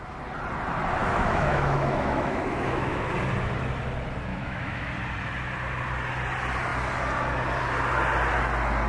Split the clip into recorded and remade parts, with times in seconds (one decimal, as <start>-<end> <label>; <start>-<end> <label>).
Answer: 0.0-1.0 recorded; 1.0-3.1 remade; 3.1-4.3 recorded; 4.3-4.9 remade; 4.9-8.9 recorded